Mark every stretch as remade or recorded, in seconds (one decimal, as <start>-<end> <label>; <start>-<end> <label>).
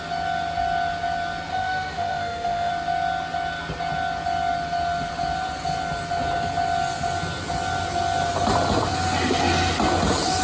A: 0.0-1.5 recorded; 1.5-2.7 remade; 2.7-10.4 recorded